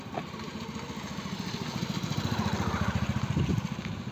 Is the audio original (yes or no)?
yes